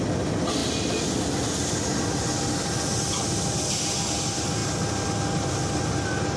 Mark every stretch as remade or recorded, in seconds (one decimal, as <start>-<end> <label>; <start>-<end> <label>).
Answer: 0.0-6.4 recorded